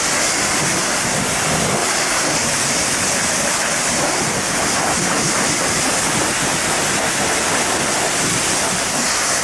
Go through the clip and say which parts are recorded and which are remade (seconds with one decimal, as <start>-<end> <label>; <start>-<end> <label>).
0.0-1.8 recorded; 1.8-5.9 remade; 5.9-9.4 recorded